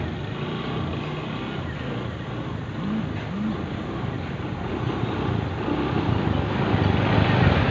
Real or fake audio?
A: real